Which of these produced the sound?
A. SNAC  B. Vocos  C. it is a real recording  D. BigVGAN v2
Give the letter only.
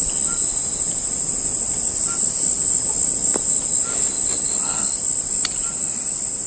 C